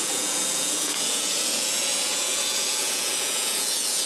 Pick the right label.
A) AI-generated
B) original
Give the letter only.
A